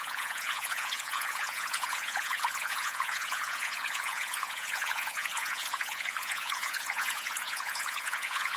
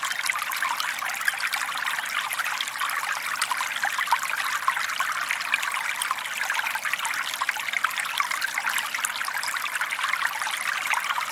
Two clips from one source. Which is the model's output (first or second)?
first